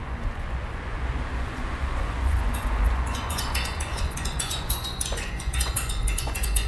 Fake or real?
fake